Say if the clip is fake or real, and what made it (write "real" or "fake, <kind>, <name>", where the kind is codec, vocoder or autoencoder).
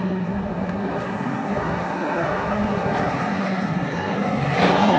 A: fake, codec, SNAC